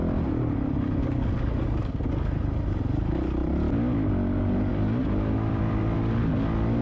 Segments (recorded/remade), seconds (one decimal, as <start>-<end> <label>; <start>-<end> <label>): 0.0-1.0 recorded; 1.0-2.1 remade; 2.1-6.8 recorded

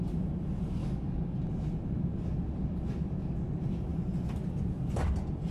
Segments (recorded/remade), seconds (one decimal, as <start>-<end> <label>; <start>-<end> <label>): 0.0-0.8 recorded; 0.8-1.4 remade; 1.4-5.5 recorded

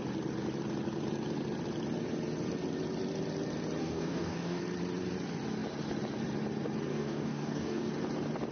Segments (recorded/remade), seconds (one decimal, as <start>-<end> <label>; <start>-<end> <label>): 0.0-3.8 recorded; 3.8-4.6 remade; 4.6-6.9 recorded; 6.9-7.9 remade; 7.9-8.5 recorded

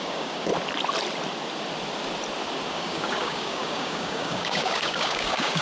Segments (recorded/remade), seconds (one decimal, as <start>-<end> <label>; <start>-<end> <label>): 0.0-0.5 remade; 0.5-2.7 recorded; 2.7-5.6 remade

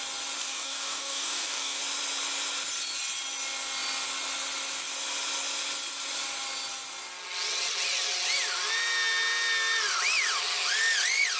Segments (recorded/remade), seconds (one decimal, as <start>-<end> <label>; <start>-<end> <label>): 0.0-0.4 recorded; 0.4-1.8 remade; 1.8-11.4 recorded

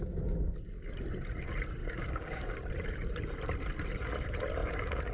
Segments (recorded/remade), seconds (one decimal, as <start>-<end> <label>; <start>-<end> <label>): 0.0-1.8 recorded; 1.8-2.5 remade; 2.5-4.6 recorded; 4.6-5.1 remade

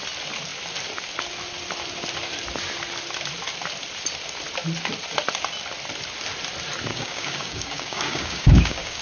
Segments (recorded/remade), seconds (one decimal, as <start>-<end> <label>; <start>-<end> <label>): 0.0-6.9 recorded; 6.9-9.0 remade

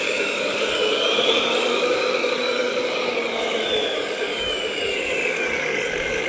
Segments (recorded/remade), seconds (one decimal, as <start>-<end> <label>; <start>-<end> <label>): 0.0-6.3 remade